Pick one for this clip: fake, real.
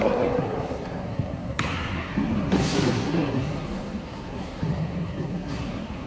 fake